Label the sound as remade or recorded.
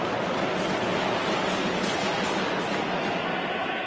recorded